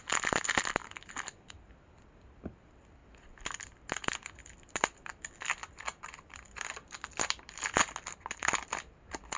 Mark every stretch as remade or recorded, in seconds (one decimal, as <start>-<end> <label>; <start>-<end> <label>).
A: 0.0-9.4 recorded